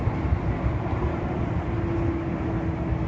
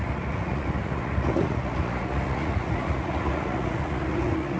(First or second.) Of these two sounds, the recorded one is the first